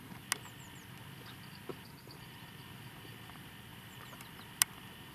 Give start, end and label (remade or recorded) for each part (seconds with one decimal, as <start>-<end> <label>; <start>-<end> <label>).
0.0-3.7 recorded; 3.7-4.4 remade; 4.4-5.1 recorded